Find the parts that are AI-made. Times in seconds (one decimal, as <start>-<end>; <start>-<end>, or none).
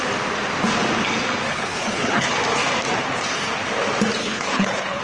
1.5-2.3; 4.2-5.0